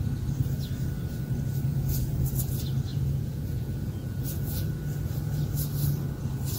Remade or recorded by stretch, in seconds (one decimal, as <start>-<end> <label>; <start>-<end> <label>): 0.0-1.7 recorded; 1.7-2.5 remade; 2.5-2.9 recorded; 2.9-4.7 remade; 4.7-6.6 recorded

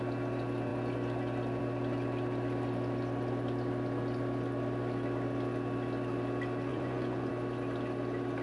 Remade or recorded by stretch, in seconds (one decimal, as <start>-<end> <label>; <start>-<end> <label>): 0.0-6.7 recorded; 6.7-7.3 remade; 7.3-8.4 recorded

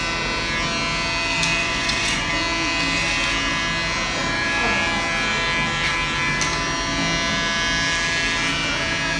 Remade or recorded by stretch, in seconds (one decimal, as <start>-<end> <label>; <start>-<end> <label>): 0.0-1.6 recorded; 1.6-2.3 remade; 2.3-9.2 recorded

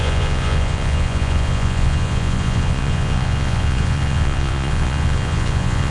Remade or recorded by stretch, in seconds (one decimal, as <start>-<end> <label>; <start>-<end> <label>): 0.0-5.9 remade

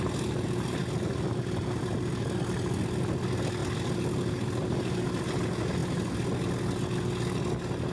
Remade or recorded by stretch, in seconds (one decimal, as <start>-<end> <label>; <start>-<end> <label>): 0.0-7.9 recorded